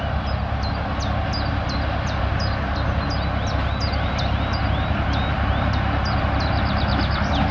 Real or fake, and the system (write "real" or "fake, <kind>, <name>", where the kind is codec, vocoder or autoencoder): real